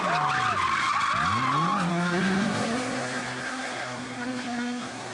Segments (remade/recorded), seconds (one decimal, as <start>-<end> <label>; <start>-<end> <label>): 0.0-1.9 recorded; 1.9-5.1 remade